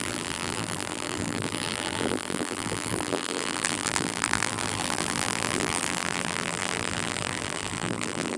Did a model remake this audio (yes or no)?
yes